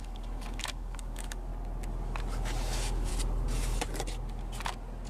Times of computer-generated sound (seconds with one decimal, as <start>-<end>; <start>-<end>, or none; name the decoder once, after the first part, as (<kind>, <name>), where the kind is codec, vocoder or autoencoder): 0.0-1.5 (codec, DAC); 2.6-3.1